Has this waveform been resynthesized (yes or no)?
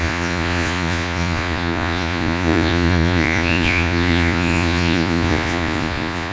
yes